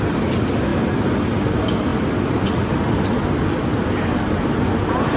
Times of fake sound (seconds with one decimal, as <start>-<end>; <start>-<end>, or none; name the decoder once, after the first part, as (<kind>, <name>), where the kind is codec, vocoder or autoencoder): none